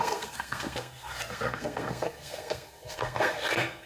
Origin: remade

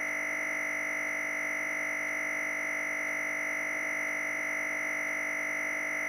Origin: recorded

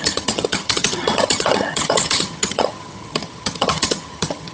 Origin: remade